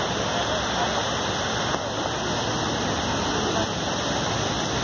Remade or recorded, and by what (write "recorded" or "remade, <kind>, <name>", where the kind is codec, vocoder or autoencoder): recorded